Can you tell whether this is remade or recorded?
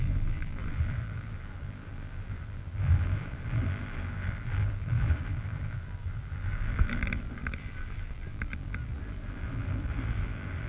remade